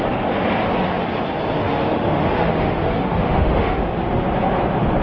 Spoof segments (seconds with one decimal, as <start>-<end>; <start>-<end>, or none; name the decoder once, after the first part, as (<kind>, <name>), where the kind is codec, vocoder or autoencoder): 1.6-3.8 (autoencoder, DAC-VAE)